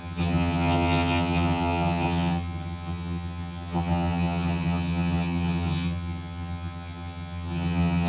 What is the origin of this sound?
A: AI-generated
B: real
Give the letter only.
A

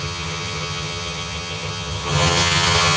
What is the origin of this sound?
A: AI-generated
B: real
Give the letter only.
A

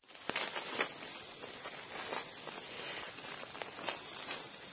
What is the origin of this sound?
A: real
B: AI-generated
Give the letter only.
A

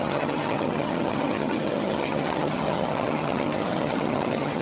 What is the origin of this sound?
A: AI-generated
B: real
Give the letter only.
A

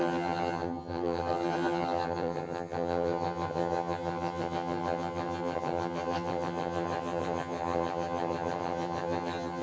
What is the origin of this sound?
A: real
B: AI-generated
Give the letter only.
B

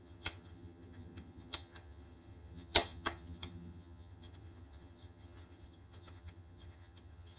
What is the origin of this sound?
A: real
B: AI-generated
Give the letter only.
B